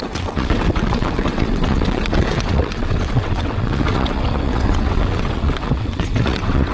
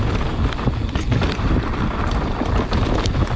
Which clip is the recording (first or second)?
second